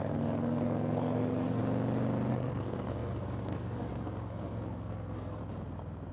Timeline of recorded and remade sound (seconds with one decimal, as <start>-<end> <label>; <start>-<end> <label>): 0.0-1.6 remade; 1.6-2.3 recorded; 2.3-5.4 remade; 5.4-6.1 recorded